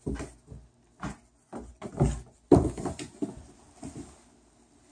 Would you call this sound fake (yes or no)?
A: no